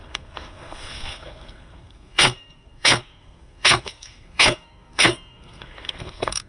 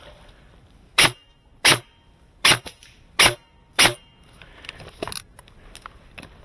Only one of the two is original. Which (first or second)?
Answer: second